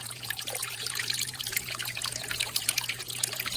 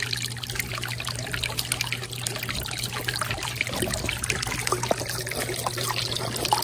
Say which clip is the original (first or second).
second